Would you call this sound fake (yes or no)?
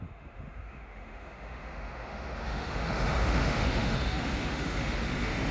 yes